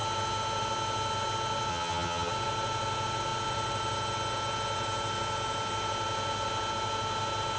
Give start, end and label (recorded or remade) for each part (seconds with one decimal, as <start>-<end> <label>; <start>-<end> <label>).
0.0-1.7 recorded; 1.7-2.3 remade; 2.3-7.6 recorded